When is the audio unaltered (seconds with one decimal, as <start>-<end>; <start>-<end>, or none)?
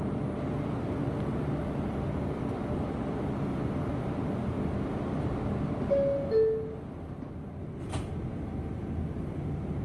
0.0-9.8